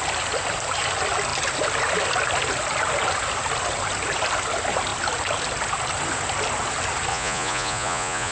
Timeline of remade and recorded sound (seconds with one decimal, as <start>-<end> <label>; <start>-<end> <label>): 0.0-7.1 recorded; 7.1-8.3 remade